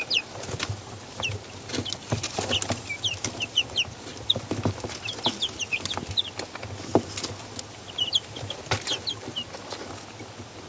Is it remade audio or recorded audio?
recorded